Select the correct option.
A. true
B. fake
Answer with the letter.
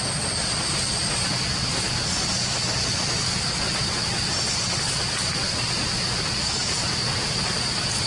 A